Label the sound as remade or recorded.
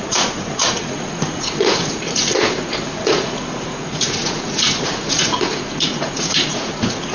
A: remade